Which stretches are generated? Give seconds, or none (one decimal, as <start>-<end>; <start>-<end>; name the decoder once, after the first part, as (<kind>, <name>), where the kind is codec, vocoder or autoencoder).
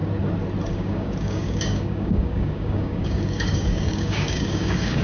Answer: 0.7-5.0 (codec, DAC)